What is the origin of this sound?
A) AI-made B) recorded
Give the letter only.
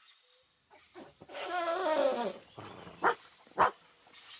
B